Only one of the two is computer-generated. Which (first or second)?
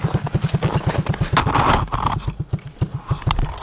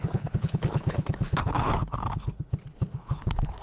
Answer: second